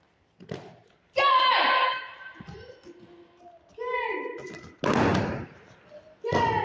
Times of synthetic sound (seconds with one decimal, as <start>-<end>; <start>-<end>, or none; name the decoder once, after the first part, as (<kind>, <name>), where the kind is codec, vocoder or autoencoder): 0.8-2.7 (vocoder, BigVGAN v2); 5.1-5.8